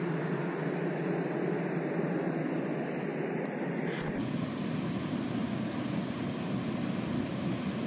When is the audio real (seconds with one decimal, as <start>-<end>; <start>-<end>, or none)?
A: 0.0-7.9